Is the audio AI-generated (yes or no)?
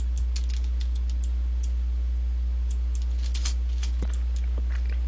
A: no